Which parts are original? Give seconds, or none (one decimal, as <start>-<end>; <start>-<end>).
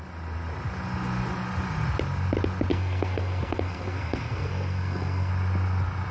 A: 0.0-2.7; 5.3-6.1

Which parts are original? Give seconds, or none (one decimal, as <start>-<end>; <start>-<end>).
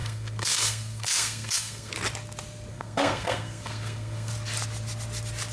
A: 1.9-2.7; 4.3-5.5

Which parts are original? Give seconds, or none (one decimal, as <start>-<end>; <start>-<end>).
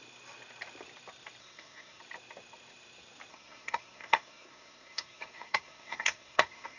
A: 0.0-1.4; 2.0-3.3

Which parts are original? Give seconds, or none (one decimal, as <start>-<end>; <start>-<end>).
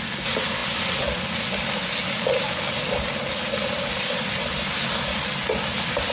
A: 0.0-6.1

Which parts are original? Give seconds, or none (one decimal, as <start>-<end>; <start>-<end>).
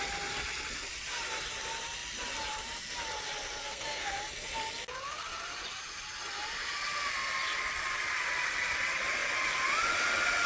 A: 0.0-3.6; 4.1-10.5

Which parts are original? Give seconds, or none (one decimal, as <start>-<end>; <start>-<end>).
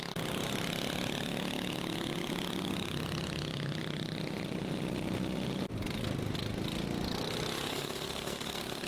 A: 0.0-7.7